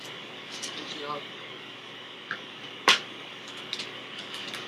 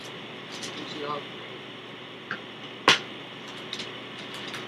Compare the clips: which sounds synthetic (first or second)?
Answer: first